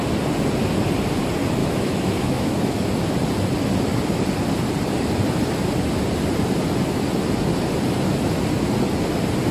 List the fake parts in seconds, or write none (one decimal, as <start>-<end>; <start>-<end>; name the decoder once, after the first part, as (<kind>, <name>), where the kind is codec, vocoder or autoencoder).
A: 1.6-2.9 (autoencoder, DAC-VAE)